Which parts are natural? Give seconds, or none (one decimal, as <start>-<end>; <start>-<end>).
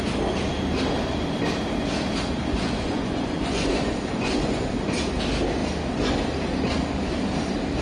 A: 0.0-2.5; 4.7-7.8